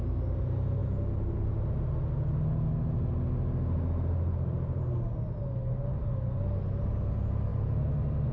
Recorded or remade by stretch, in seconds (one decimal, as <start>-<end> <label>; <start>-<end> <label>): 0.0-8.3 recorded